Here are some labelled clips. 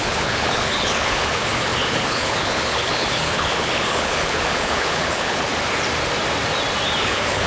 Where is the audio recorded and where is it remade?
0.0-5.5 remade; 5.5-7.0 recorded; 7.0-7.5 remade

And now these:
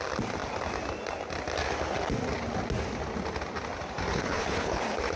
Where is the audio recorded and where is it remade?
0.0-4.1 recorded; 4.1-4.8 remade; 4.8-5.2 recorded